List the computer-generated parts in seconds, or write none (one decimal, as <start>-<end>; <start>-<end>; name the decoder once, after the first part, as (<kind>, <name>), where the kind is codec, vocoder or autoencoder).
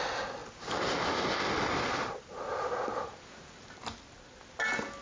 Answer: none